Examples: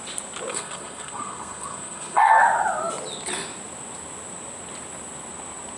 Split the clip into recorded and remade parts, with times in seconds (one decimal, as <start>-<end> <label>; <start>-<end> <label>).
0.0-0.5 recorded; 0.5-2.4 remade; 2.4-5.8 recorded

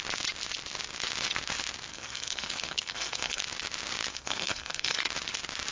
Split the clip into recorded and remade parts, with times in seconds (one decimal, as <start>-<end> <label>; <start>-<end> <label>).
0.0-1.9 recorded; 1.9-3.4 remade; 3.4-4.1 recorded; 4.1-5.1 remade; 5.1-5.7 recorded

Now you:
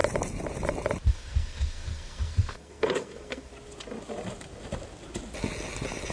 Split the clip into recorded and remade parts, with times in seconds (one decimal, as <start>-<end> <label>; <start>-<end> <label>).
0.0-1.1 recorded; 1.1-3.5 remade; 3.5-6.1 recorded

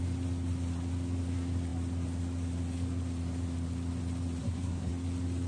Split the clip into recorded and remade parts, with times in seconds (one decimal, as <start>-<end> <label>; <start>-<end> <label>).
0.0-4.4 recorded; 4.4-4.9 remade; 4.9-5.5 recorded

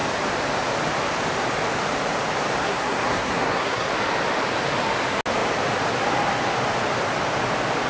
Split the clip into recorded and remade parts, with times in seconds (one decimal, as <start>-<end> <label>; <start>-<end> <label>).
0.0-2.6 recorded; 2.6-3.9 remade; 3.9-7.9 recorded

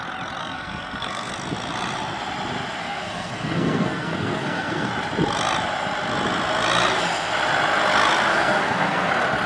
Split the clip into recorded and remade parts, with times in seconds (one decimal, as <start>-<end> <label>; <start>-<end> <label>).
0.0-0.4 recorded; 0.4-1.3 remade; 1.3-2.8 recorded; 2.8-4.9 remade; 4.9-8.3 recorded; 8.3-9.1 remade; 9.1-9.5 recorded

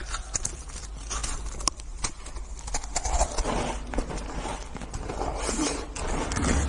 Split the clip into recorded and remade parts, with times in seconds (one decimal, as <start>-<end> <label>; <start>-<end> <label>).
0.0-6.7 recorded

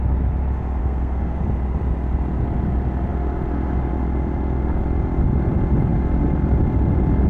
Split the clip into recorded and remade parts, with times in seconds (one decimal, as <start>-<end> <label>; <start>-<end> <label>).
0.0-0.8 recorded; 0.8-1.4 remade; 1.4-7.3 recorded